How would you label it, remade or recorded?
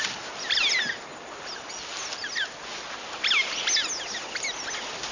recorded